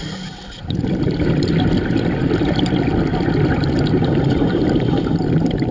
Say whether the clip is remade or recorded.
recorded